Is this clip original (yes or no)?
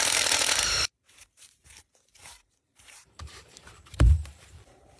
no